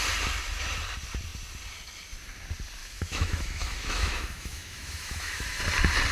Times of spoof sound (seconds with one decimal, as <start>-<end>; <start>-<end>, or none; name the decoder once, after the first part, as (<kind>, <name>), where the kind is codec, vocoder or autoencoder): 2.8-5.6 (autoencoder, DAC-VAE)